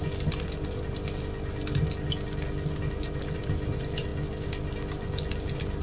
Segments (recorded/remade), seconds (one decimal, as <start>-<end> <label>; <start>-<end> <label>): 0.0-5.8 recorded